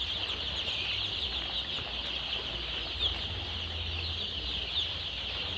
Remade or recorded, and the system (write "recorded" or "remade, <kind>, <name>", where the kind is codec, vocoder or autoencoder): recorded